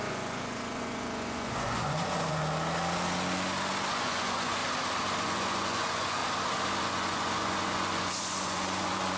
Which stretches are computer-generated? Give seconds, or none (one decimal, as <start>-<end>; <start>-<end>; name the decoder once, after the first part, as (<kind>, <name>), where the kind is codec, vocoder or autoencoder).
0.0-2.4 (vocoder, Vocos); 3.9-4.6; 5.2-6.2; 6.8-9.2